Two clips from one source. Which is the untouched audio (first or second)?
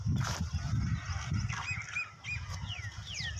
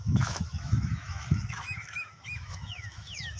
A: first